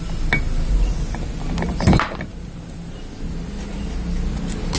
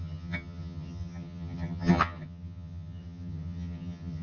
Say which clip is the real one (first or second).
first